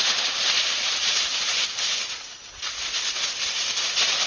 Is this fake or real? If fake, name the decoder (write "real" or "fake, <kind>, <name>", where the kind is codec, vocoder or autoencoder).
real